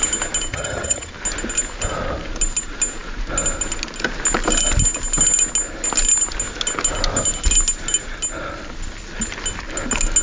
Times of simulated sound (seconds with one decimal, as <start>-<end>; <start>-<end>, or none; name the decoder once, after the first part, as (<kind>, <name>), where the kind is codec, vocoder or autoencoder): 0.5-1.1 (vocoder, HiFi-GAN)